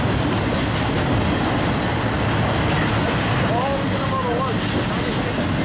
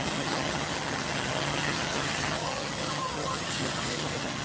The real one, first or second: first